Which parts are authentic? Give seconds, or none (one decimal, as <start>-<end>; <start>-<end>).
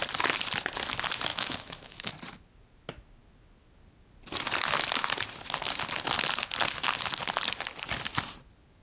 0.0-1.3; 2.1-8.8